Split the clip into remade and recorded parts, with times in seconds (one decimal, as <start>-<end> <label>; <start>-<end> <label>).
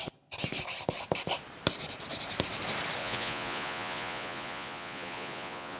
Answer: 0.0-3.0 recorded; 3.0-5.8 remade